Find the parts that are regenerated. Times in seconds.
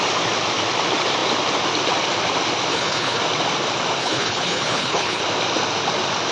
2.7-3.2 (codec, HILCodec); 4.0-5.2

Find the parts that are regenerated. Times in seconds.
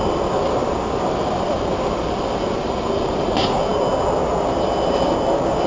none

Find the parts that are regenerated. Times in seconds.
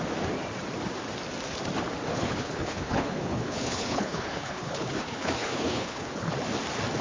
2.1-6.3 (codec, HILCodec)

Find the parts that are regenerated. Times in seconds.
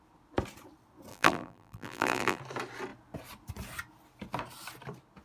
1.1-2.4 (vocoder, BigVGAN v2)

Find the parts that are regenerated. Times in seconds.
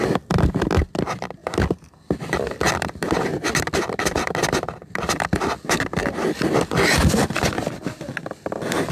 none